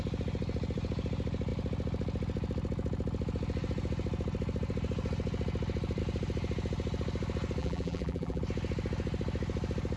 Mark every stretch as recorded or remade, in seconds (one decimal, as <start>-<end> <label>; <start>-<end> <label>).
0.0-7.6 recorded; 7.6-8.4 remade; 8.4-10.0 recorded